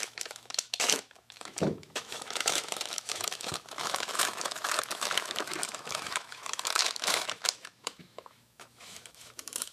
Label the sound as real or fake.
fake